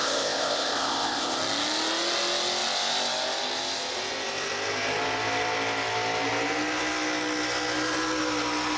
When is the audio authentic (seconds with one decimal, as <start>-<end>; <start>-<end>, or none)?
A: 1.4-8.8